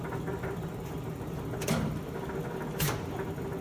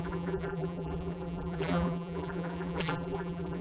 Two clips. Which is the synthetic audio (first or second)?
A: second